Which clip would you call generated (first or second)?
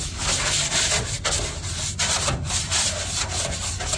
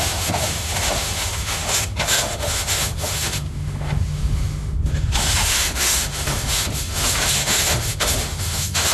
second